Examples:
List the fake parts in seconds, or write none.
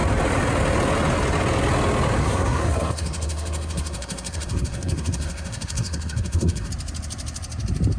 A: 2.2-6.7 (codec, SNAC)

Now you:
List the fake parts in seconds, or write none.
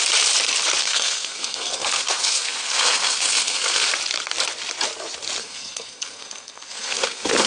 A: 0.8-3.9 (codec, SNAC); 5.4-7.5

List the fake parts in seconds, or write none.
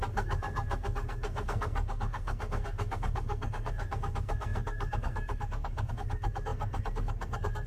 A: 0.0-7.7 (codec, SNAC)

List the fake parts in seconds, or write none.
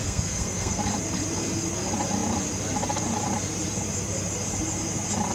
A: 0.0-0.8 (codec, SNAC)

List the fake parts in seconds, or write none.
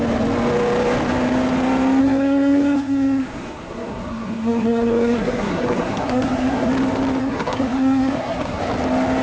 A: 2.0-6.7 (codec, SNAC); 7.2-8.6